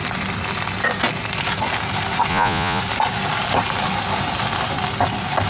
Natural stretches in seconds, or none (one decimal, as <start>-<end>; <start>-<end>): 0.0-2.3; 2.8-5.5